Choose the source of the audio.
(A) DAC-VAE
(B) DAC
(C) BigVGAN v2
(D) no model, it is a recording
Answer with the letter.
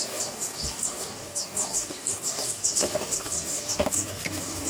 B